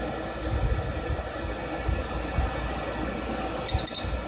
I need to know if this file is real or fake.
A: real